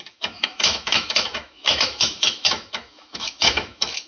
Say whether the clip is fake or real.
fake